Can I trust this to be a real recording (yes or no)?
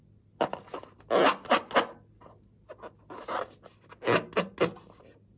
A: yes